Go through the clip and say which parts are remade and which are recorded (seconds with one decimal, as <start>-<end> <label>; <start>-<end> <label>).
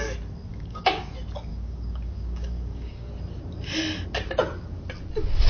0.0-0.5 recorded; 0.5-1.1 remade; 1.1-1.5 recorded; 1.5-3.1 remade; 3.1-5.5 recorded